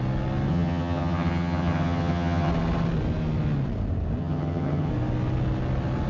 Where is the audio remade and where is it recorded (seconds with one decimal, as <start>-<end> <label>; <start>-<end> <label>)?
0.0-0.5 recorded; 0.5-2.5 remade; 2.5-4.2 recorded; 4.2-4.9 remade; 4.9-6.1 recorded